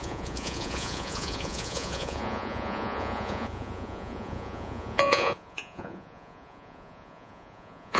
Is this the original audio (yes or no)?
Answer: no